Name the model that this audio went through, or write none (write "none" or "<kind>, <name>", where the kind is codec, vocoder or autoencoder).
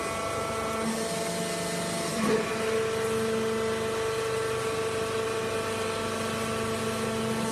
none